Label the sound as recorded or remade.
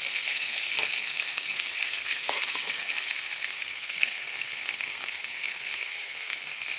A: remade